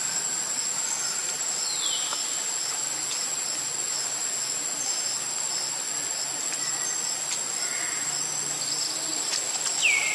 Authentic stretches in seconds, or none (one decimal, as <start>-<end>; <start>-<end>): 0.0-10.1